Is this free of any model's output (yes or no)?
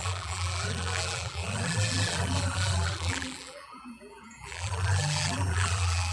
no